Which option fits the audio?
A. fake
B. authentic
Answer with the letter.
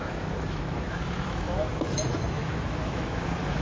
A